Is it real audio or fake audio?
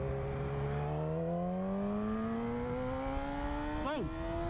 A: real